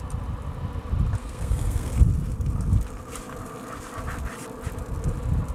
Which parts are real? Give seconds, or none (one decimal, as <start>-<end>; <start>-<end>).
0.0-1.2; 2.0-5.5